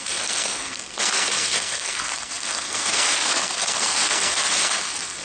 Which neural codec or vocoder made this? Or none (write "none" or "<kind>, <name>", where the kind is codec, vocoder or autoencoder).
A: codec, SNAC